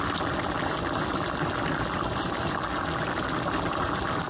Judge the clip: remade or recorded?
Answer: recorded